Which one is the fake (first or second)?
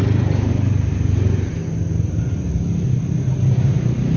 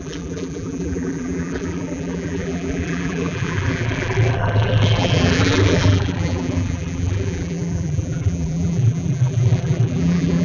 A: second